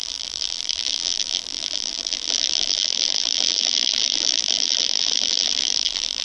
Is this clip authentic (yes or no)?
no